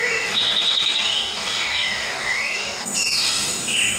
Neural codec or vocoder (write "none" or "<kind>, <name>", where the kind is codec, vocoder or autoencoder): codec, DAC